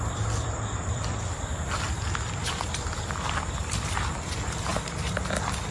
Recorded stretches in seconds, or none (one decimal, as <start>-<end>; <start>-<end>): 1.5-3.8; 4.7-5.7